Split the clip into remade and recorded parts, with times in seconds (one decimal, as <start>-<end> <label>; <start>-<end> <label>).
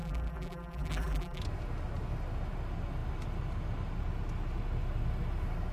0.0-1.4 remade; 1.4-5.7 recorded